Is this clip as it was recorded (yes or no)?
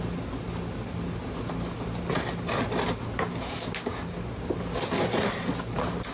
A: yes